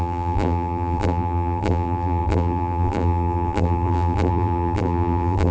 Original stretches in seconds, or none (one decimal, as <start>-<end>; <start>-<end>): none